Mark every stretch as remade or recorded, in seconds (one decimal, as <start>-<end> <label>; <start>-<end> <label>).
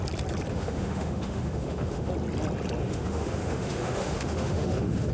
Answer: 0.0-0.5 recorded; 0.5-2.1 remade; 2.1-2.8 recorded; 2.8-5.1 remade